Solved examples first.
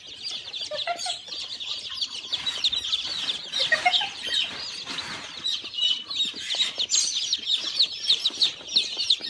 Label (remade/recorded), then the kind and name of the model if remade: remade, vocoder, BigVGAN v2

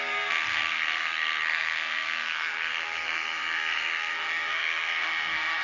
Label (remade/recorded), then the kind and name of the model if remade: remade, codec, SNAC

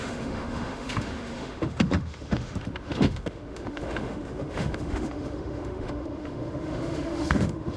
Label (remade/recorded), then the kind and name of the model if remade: remade, autoencoder, DAC-VAE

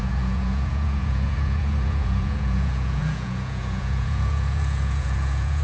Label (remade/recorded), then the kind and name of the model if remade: remade, vocoder, Vocos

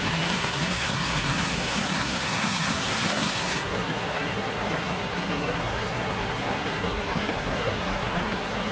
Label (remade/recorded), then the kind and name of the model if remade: remade, codec, SNAC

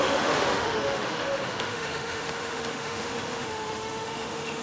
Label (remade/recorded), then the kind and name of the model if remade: remade, autoencoder, DAC-VAE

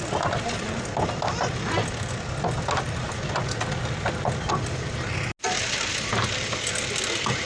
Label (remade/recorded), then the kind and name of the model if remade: recorded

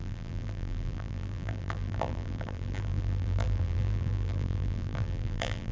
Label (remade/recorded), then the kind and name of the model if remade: remade, vocoder, BigVGAN v2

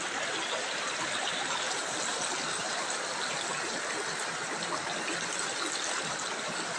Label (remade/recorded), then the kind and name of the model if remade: recorded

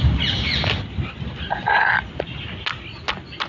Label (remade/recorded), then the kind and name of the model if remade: recorded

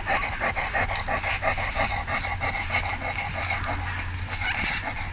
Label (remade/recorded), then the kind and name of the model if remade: recorded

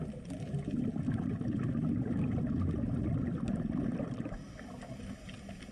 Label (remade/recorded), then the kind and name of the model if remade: recorded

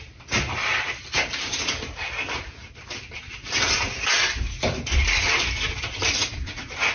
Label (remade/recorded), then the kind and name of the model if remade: recorded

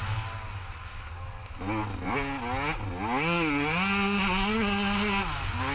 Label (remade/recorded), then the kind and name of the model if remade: recorded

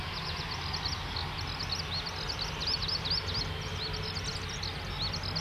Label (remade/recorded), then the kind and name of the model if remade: recorded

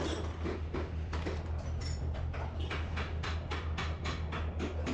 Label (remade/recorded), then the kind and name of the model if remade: recorded